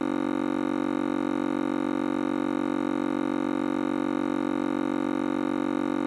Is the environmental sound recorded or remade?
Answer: recorded